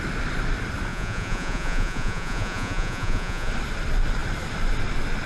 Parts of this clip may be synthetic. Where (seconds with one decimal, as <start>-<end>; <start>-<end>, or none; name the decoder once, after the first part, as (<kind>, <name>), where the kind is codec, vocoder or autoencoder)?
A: 0.9-3.5 (vocoder, Vocos)